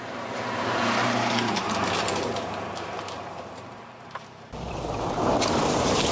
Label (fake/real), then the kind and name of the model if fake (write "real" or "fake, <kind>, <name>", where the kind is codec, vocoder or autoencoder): fake, vocoder, BigVGAN v2